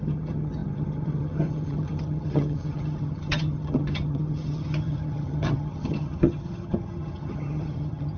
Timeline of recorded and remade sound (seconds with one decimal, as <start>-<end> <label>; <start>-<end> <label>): 0.0-8.2 remade